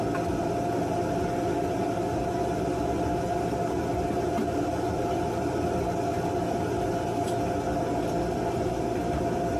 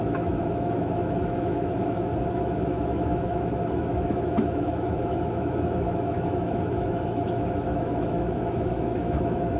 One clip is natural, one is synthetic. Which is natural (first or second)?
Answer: first